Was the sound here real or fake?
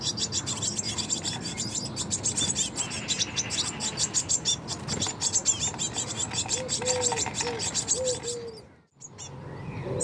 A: real